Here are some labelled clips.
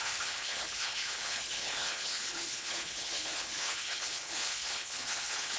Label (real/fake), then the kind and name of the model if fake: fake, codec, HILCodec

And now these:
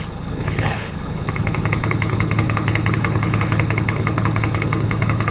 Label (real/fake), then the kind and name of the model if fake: fake, codec, HILCodec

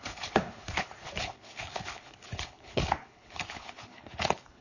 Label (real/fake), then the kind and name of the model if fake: fake, codec, HILCodec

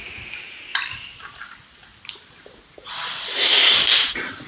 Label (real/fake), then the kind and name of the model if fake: real